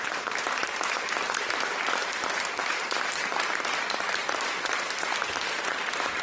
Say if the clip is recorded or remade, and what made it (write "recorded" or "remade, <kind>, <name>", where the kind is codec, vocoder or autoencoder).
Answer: remade, vocoder, BigVGAN v2